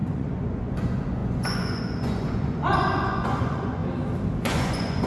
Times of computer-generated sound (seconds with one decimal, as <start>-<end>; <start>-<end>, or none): 0.0-3.8; 4.4-5.1